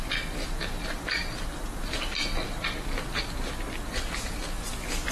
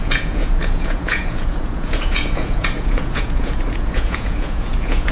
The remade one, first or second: second